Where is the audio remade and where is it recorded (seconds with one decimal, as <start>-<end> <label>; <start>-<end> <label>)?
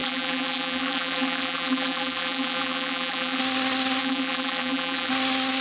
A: 0.0-3.4 remade; 3.4-4.0 recorded; 4.0-5.1 remade; 5.1-5.6 recorded